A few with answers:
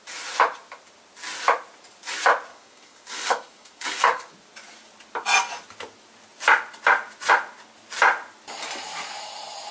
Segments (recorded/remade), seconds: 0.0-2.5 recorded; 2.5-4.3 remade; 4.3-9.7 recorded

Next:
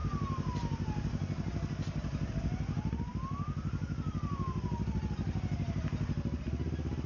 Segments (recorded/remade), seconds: 0.0-7.1 recorded

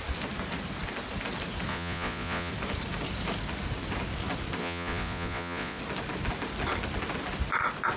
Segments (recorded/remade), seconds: 0.0-1.7 recorded; 1.7-2.5 remade; 2.5-4.6 recorded; 4.6-5.8 remade; 5.8-8.0 recorded